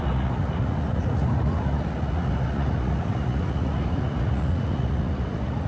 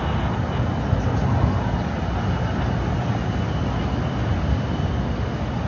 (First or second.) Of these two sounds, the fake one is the first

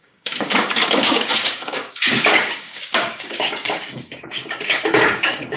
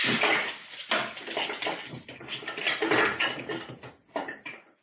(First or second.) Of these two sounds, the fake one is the first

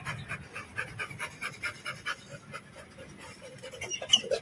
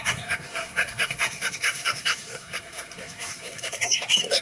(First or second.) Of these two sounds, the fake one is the second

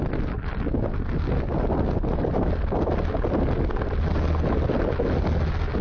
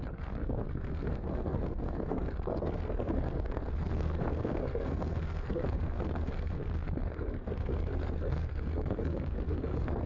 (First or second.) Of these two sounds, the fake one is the second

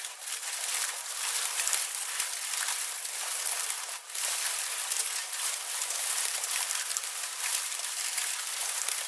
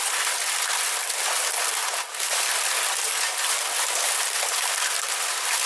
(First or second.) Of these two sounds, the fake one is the first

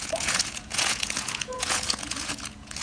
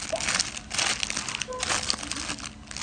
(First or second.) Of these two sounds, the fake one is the first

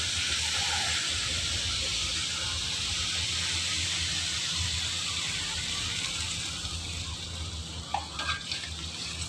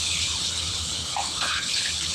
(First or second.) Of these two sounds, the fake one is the second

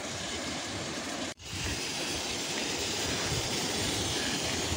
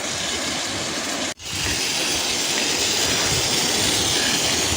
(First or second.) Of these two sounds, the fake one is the first